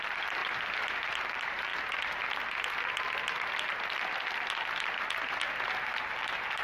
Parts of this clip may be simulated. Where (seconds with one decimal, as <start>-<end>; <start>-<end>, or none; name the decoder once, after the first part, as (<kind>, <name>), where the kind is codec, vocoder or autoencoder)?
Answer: 0.0-0.4 (vocoder, BigVGAN v2); 1.2-1.7; 5.7-6.6